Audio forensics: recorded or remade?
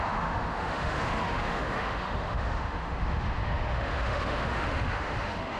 remade